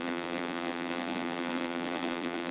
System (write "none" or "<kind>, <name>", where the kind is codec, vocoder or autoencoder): vocoder, BigVGAN v2